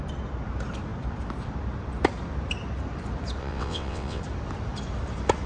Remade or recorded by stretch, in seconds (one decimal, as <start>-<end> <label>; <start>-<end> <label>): 0.0-3.4 recorded; 3.4-4.2 remade; 4.2-5.5 recorded